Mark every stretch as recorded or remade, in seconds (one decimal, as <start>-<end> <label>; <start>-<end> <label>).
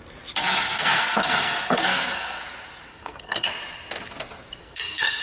0.0-0.4 recorded; 0.4-2.4 remade; 2.4-2.9 recorded; 2.9-3.5 remade; 3.5-4.6 recorded; 4.6-5.2 remade